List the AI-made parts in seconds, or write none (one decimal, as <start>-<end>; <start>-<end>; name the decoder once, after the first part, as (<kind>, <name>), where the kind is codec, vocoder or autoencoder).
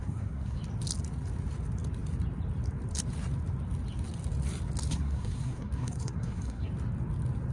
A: 0.0-0.6 (codec, SNAC); 4.9-6.7